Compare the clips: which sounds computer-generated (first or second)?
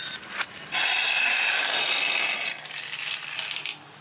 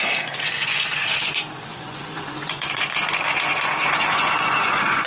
second